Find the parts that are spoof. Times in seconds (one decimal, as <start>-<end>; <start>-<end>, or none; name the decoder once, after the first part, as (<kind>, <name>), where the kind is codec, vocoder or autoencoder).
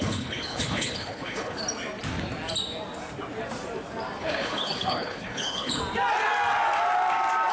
0.0-1.6 (codec, HILCodec); 4.2-5.8